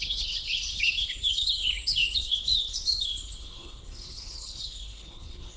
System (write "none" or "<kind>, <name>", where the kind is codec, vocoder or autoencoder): codec, HILCodec